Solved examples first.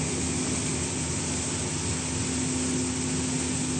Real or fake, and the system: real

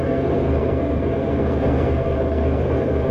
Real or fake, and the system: fake, codec, SNAC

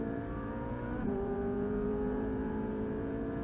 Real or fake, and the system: fake, vocoder, Vocos